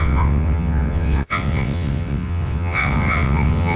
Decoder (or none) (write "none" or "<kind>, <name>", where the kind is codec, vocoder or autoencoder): vocoder, WaveNeXt